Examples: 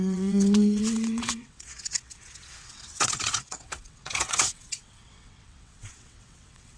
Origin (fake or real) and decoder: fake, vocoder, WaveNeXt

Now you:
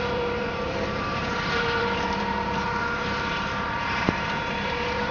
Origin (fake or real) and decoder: fake, vocoder, BigVGAN v2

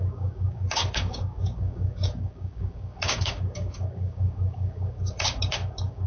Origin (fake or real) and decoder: fake, codec, DAC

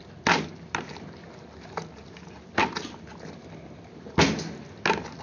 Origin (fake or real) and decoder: real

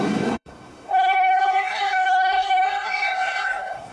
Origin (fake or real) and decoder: fake, codec, SNAC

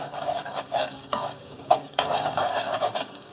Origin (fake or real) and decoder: fake, codec, DAC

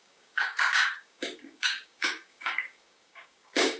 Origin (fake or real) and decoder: fake, codec, DAC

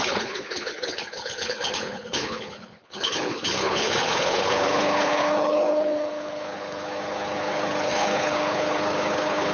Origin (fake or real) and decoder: fake, codec, HILCodec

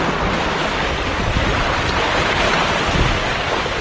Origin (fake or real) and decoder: real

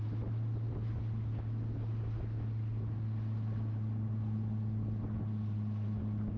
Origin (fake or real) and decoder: real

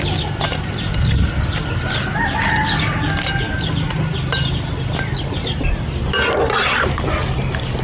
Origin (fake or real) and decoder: real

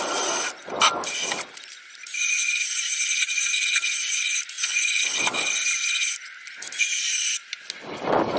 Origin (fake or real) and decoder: real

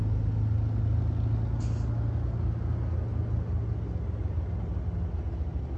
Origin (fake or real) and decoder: real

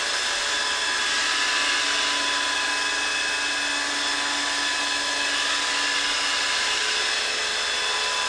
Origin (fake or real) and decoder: real